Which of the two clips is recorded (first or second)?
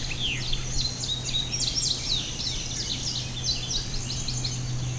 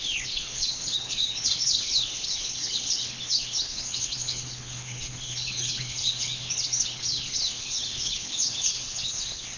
first